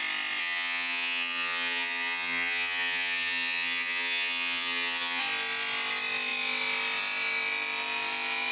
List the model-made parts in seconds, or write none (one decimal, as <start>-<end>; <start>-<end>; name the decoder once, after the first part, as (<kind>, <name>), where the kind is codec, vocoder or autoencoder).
0.4-5.2 (vocoder, HiFi-GAN)